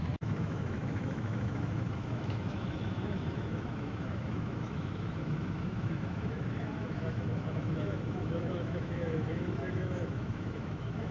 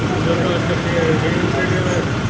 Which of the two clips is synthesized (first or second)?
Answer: first